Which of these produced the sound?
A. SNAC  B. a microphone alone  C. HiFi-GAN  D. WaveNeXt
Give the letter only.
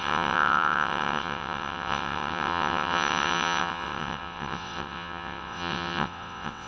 D